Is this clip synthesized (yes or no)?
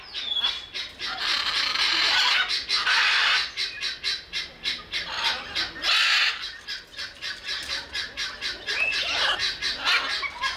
no